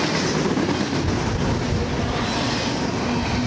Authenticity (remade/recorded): recorded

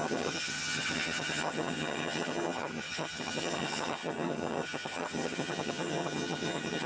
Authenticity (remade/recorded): remade